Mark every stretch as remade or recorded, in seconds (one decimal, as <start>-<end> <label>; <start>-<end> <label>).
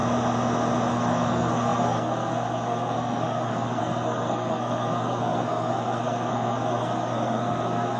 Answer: 0.0-0.9 recorded; 0.9-8.0 remade